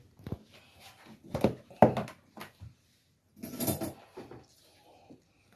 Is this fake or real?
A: real